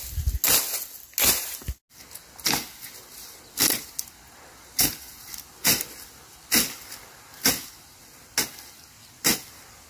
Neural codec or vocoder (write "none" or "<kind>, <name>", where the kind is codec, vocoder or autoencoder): none